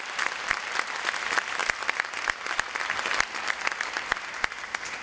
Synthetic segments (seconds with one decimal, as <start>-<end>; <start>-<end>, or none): none